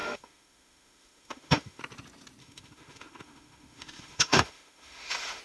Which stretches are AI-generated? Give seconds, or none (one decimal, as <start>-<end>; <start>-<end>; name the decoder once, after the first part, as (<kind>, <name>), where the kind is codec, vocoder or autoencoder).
0.0-1.8 (autoencoder, DAC-VAE); 2.4-5.4